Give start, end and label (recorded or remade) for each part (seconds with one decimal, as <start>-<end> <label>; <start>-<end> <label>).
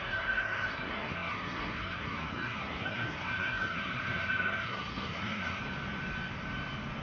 0.0-5.6 remade; 5.6-7.0 recorded